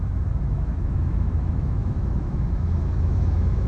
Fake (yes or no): yes